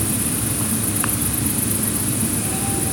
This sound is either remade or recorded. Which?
recorded